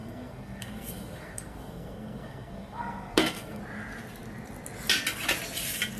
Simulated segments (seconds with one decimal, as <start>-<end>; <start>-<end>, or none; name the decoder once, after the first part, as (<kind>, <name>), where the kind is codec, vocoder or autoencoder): 0.0-3.6 (codec, SNAC)